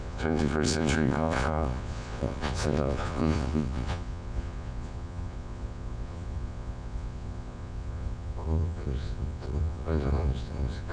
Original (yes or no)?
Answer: no